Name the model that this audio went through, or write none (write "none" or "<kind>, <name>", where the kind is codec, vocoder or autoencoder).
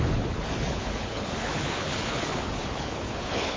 codec, HILCodec